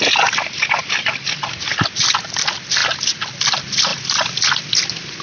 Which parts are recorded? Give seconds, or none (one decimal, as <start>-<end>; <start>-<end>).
0.0-3.9; 4.6-5.2